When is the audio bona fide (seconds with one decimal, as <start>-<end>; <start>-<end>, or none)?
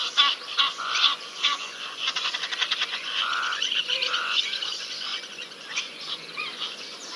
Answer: 0.0-0.6